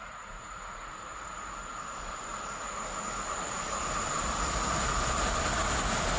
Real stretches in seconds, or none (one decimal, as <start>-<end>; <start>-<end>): 1.3-1.9; 2.3-6.2